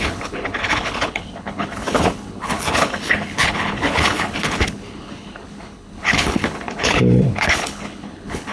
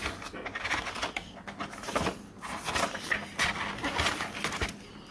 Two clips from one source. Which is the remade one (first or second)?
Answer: first